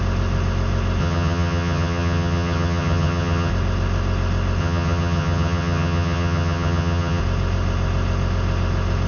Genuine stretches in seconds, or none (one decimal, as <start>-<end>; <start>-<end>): 0.0-1.0; 3.5-4.6; 7.2-9.1